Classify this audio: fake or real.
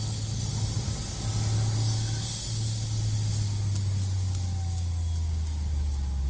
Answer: real